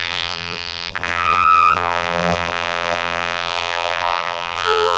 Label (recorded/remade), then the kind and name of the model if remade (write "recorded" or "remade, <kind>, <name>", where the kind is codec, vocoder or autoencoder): remade, vocoder, BigVGAN v2